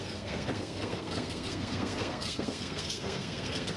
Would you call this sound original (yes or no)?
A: no